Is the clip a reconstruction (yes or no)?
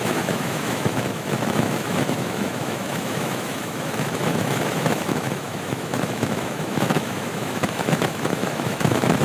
yes